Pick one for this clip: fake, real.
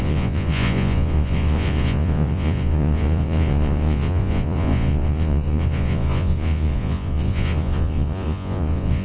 fake